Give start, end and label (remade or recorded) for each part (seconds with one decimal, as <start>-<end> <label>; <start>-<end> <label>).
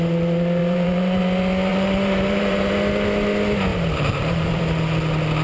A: 0.0-0.6 recorded; 0.6-1.2 remade; 1.2-1.7 recorded; 1.7-2.7 remade; 2.7-3.7 recorded; 3.7-4.6 remade; 4.6-5.4 recorded